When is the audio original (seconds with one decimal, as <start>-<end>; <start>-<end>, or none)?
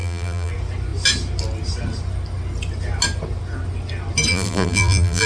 0.5-4.3